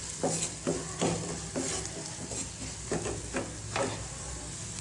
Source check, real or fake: real